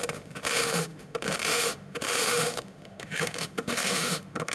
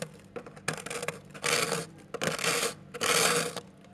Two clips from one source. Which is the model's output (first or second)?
first